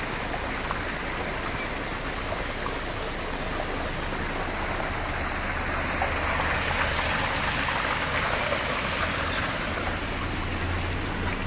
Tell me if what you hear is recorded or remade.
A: recorded